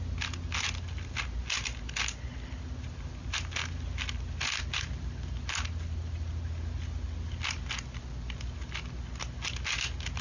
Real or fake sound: real